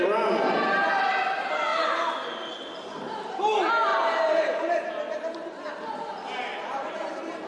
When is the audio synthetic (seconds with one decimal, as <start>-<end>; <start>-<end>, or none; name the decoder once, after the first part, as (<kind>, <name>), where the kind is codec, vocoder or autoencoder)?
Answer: 3.9-4.9 (vocoder, BigVGAN v2); 6.5-7.5